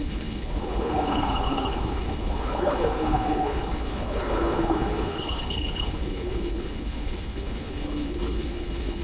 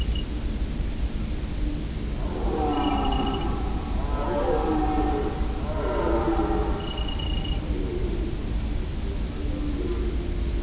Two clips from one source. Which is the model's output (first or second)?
first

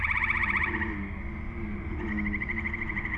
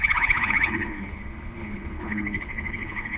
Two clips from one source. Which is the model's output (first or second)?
second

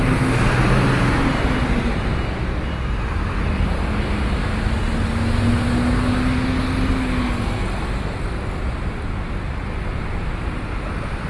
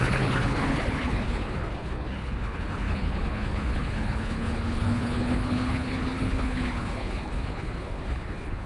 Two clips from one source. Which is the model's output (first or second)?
second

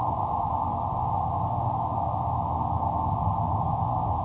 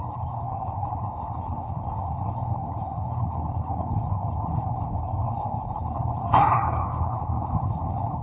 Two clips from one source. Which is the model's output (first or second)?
second